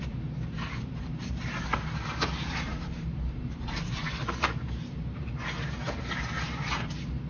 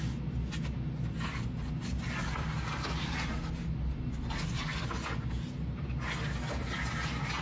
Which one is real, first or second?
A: second